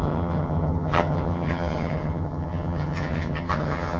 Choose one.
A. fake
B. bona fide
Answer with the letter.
A